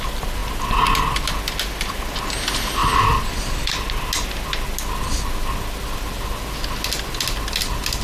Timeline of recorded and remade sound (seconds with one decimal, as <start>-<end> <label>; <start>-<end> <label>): 0.0-8.0 recorded

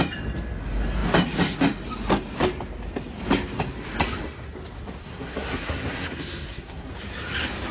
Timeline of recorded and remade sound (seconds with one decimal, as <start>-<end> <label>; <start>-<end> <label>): 0.0-5.0 recorded; 5.0-6.9 remade; 6.9-7.7 recorded

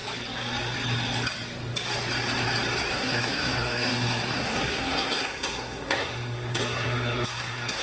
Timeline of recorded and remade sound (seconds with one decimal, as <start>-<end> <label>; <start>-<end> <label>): 0.0-2.9 recorded; 2.9-7.8 remade

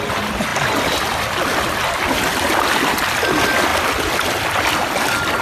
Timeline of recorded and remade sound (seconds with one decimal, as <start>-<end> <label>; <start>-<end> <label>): 0.0-5.4 recorded

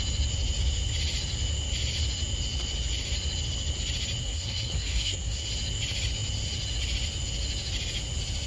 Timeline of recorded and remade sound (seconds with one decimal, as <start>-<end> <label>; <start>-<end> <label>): 0.0-4.2 recorded; 4.2-5.5 remade; 5.5-8.5 recorded

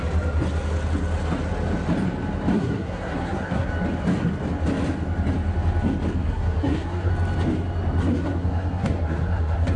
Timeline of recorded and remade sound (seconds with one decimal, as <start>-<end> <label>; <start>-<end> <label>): 0.0-2.5 recorded; 2.5-3.7 remade; 3.7-6.2 recorded; 6.2-7.1 remade; 7.1-8.0 recorded; 8.0-9.8 remade

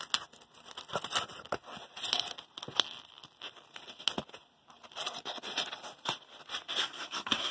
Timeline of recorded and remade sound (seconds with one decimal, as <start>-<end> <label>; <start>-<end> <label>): 0.0-6.8 recorded; 6.8-7.5 remade

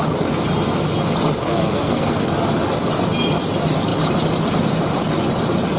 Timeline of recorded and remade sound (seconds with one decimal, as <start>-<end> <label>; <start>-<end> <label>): 0.0-1.4 recorded; 1.4-2.3 remade; 2.3-5.8 recorded